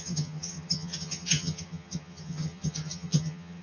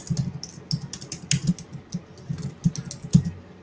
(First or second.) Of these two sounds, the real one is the second